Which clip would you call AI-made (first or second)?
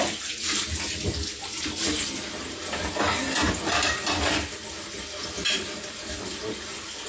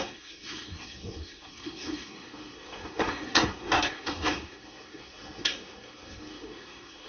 second